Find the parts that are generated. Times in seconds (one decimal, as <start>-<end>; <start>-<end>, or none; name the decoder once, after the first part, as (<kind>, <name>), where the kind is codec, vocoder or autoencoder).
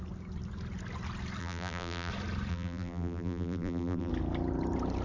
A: 1.4-2.1 (vocoder, BigVGAN v2); 2.5-4.1